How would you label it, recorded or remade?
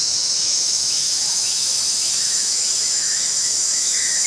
remade